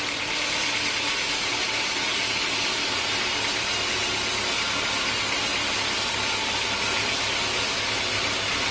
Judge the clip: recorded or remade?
recorded